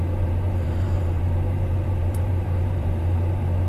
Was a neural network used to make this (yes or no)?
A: yes